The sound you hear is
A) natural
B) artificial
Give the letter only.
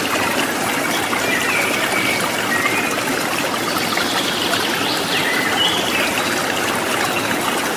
A